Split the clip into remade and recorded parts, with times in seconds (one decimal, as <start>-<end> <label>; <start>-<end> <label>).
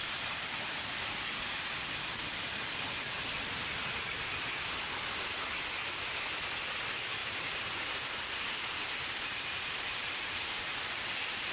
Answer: 0.0-7.2 recorded; 7.2-10.9 remade; 10.9-11.5 recorded